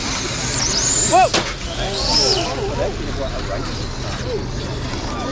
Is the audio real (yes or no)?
yes